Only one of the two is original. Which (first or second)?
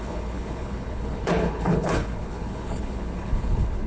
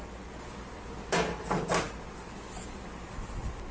second